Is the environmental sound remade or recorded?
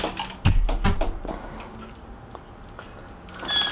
recorded